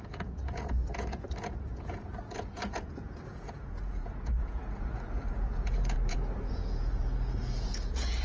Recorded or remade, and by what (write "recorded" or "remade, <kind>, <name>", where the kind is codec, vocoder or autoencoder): remade, vocoder, Vocos